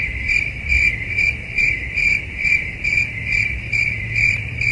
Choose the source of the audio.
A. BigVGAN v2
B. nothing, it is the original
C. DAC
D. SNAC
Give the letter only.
A